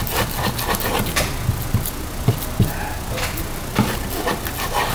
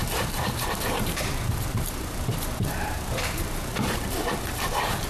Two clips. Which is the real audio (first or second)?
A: first